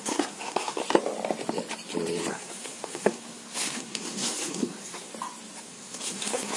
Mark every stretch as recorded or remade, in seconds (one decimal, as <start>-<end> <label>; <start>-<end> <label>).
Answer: 0.0-0.8 remade; 0.8-2.3 recorded; 2.3-5.1 remade; 5.1-5.6 recorded; 5.6-6.6 remade